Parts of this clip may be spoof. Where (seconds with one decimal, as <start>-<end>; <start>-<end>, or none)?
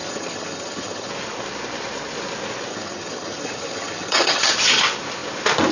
0.0-1.1; 2.7-4.5